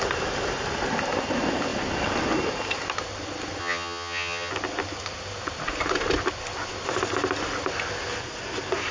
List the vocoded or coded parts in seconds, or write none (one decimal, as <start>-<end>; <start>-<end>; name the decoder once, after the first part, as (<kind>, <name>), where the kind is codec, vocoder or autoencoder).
3.6-4.5 (vocoder, HiFi-GAN)